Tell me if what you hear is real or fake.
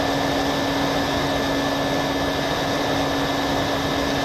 real